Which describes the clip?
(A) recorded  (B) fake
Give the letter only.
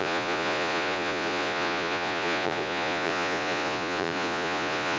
B